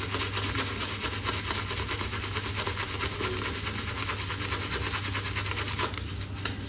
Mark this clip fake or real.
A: real